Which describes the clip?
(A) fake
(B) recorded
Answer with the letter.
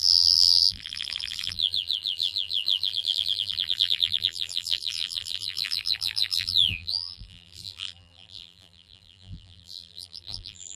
A